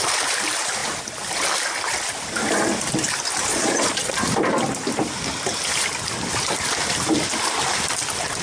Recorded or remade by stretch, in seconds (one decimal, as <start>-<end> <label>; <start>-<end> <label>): 0.0-3.5 recorded; 3.5-4.1 remade; 4.1-8.4 recorded

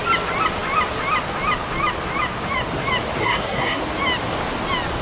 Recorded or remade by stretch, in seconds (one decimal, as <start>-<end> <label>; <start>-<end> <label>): 0.0-3.2 recorded; 3.2-3.8 remade; 3.8-5.0 recorded

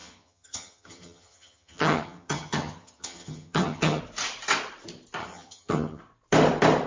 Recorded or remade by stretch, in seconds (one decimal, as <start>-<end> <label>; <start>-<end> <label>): 0.0-4.0 remade; 4.0-5.2 recorded; 5.2-6.0 remade; 6.0-6.9 recorded

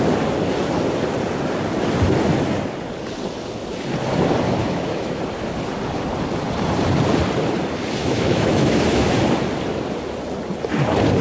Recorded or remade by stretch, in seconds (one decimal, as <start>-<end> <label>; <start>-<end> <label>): 0.0-4.6 recorded; 4.6-5.2 remade; 5.2-8.0 recorded; 8.0-9.1 remade; 9.1-11.2 recorded

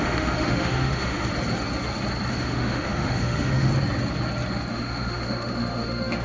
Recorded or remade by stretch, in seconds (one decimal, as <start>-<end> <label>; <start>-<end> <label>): 0.0-1.3 remade; 1.3-2.3 recorded; 2.3-3.7 remade; 3.7-4.7 recorded; 4.7-6.2 remade

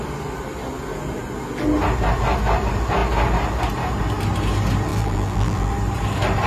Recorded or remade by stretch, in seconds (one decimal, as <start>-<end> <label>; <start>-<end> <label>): 0.0-4.9 recorded; 4.9-5.7 remade; 5.7-6.5 recorded

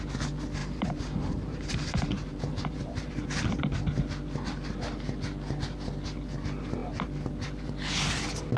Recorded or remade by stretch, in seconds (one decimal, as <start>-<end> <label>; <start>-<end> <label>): 0.0-0.6 recorded; 0.6-3.1 remade; 3.1-8.6 recorded

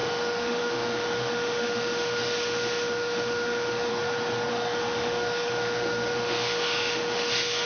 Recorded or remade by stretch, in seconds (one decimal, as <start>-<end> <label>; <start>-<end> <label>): 0.0-3.9 remade; 3.9-4.5 recorded; 4.5-7.7 remade